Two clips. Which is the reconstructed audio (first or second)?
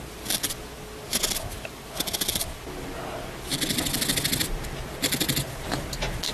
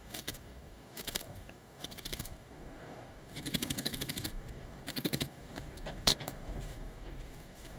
second